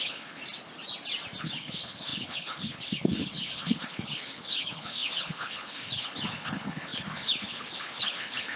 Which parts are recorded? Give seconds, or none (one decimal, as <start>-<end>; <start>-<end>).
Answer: 0.4-1.4